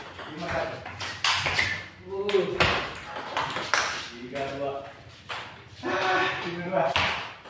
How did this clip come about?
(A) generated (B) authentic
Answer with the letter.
B